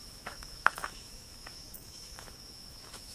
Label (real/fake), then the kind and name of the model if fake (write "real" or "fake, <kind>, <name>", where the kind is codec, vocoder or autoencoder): fake, autoencoder, DAC-VAE